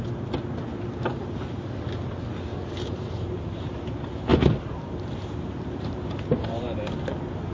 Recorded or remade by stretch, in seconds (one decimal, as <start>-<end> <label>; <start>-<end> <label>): 0.0-1.1 recorded; 1.1-1.8 remade; 1.8-2.5 recorded; 2.5-3.8 remade; 3.8-4.3 recorded; 4.3-7.0 remade; 7.0-7.5 recorded